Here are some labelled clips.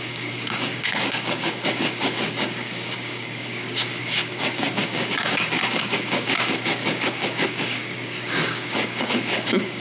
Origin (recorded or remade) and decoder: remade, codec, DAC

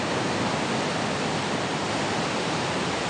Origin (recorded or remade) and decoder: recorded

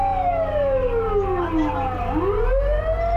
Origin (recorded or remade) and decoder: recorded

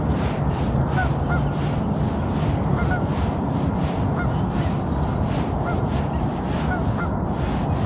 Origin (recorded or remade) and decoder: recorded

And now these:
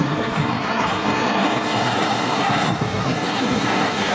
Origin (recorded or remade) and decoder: remade, codec, SNAC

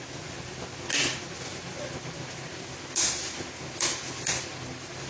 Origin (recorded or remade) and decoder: recorded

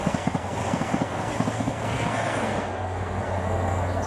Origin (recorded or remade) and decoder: remade, codec, SNAC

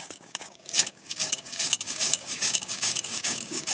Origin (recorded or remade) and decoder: remade, codec, DAC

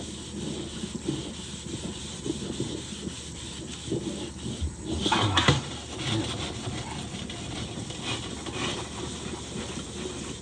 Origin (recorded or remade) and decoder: recorded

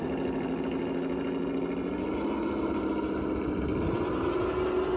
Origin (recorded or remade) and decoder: recorded